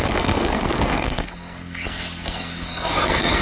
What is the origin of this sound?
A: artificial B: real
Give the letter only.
A